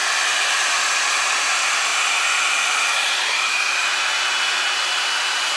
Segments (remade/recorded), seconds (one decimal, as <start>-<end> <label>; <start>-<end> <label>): 0.0-5.6 recorded